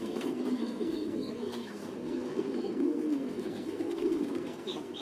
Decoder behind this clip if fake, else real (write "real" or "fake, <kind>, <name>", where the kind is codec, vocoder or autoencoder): fake, codec, SNAC